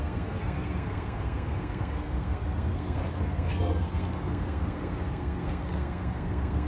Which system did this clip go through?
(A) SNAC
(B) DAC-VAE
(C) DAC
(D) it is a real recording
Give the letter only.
A